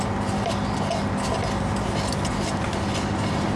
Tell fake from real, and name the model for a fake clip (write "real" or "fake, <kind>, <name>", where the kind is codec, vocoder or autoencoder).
real